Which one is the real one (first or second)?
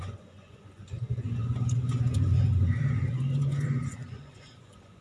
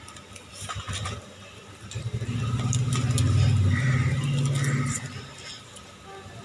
second